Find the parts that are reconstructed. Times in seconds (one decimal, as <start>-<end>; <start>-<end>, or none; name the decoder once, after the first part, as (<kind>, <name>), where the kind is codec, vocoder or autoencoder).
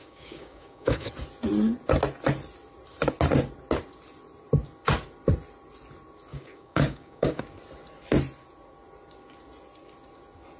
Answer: 0.0-1.1 (codec, DAC); 6.3-7.4